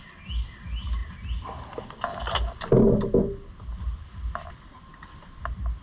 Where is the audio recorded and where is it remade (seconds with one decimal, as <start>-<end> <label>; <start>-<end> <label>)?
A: 0.0-5.8 recorded